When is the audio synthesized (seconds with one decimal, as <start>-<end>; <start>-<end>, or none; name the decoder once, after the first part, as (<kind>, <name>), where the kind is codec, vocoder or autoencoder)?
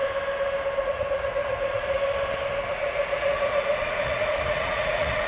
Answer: 0.8-2.0 (vocoder, Vocos); 2.7-5.3